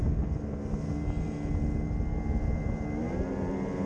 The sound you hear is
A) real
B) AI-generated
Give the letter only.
A